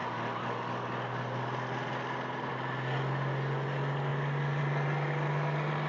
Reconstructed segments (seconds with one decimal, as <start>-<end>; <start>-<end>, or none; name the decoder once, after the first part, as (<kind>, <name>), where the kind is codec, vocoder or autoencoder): none